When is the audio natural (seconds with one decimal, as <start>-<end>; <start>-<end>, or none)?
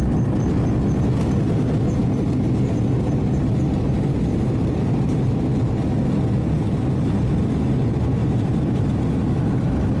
0.0-8.2; 8.8-10.0